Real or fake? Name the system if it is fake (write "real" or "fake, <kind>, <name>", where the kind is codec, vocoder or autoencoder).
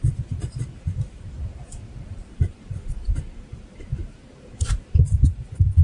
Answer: fake, vocoder, BigVGAN v2